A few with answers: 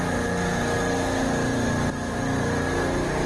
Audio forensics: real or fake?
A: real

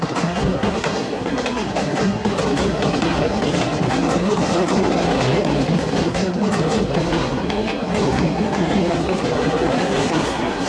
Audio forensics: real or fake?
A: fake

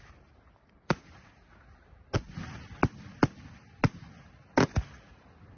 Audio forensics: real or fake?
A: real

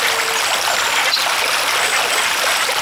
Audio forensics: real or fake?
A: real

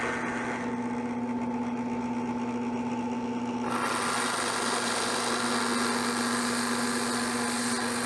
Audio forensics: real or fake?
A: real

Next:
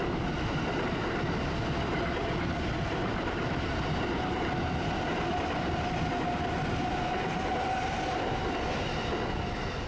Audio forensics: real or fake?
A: real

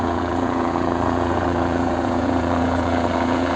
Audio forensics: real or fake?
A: fake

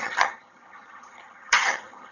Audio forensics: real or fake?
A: fake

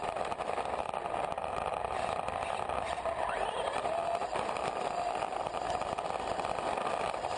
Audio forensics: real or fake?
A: real